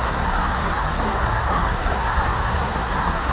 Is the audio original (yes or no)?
no